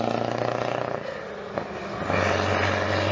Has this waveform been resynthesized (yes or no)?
no